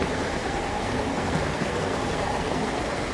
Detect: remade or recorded remade